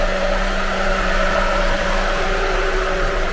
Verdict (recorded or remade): remade